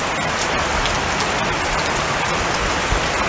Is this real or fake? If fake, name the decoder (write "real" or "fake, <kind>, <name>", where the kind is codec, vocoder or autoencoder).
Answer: real